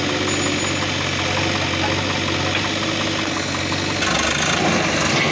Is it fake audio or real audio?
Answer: real